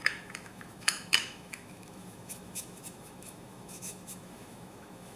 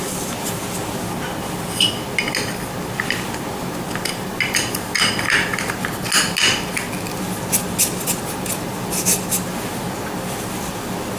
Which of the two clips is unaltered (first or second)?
second